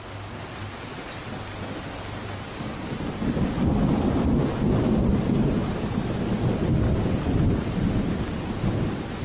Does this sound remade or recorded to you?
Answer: recorded